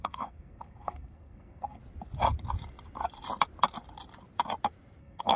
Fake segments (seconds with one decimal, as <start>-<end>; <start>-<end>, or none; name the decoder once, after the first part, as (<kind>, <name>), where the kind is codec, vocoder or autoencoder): 0.0-1.8 (codec, SNAC); 5.0-5.4